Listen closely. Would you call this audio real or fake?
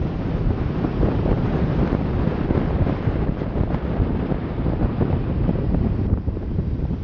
fake